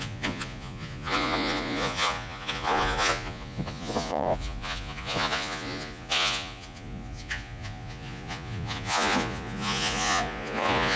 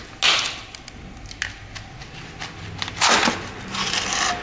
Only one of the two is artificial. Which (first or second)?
first